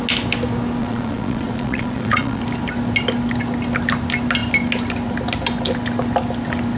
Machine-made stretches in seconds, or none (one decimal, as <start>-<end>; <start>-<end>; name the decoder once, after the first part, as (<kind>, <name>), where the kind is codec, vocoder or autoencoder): 0.8-2.4 (vocoder, Vocos)